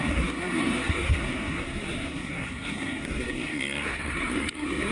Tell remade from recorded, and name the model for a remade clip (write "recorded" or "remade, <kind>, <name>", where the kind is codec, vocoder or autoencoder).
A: remade, codec, SNAC